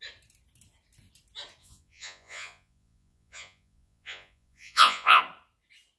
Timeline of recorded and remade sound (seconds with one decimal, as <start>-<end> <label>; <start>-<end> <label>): 0.0-1.6 recorded; 1.6-5.2 remade; 5.2-6.0 recorded